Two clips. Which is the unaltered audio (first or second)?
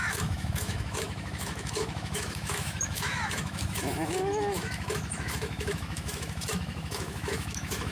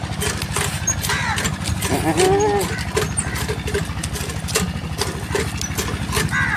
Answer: second